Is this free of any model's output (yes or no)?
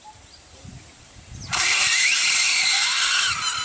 no